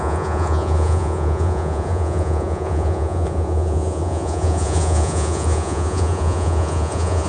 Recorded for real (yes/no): no